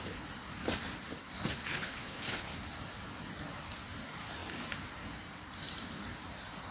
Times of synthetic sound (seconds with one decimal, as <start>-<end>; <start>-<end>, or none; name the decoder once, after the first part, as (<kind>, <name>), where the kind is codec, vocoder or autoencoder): 1.7-2.5 (codec, HILCodec)